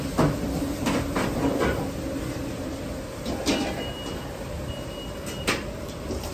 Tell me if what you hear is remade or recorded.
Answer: recorded